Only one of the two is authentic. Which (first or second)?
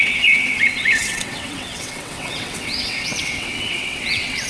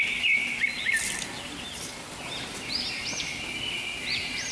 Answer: second